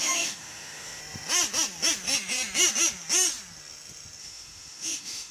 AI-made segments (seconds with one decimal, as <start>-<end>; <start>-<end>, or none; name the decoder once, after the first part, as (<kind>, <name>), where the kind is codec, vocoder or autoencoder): 0.0-1.0 (autoencoder, DAC-VAE); 4.2-5.3